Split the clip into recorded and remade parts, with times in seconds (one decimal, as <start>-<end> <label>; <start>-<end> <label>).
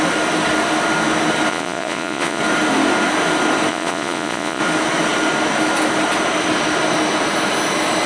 0.0-1.5 recorded; 1.5-2.4 remade; 2.4-3.7 recorded; 3.7-4.6 remade; 4.6-8.1 recorded